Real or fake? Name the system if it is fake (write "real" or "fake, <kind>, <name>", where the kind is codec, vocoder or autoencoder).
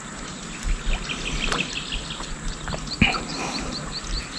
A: real